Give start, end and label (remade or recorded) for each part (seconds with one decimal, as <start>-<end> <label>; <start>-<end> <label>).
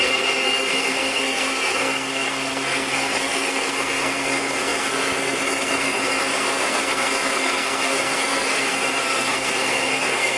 0.0-10.4 remade